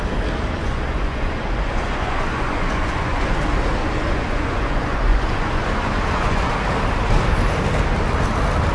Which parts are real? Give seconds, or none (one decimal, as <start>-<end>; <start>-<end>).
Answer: 0.0-0.6; 3.4-3.8; 6.5-8.7